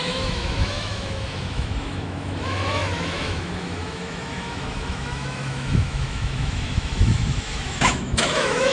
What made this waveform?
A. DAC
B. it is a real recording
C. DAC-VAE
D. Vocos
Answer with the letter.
C